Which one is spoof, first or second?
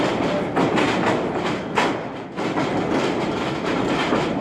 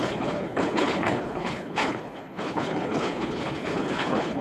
second